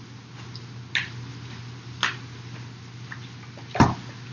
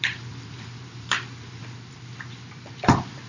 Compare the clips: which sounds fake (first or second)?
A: second